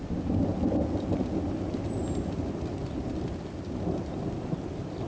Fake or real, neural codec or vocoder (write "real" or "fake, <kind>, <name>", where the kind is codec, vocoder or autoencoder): real